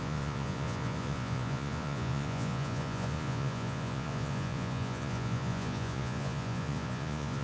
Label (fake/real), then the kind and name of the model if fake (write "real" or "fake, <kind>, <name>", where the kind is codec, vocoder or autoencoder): fake, vocoder, Vocos